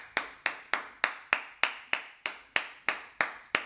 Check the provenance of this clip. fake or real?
real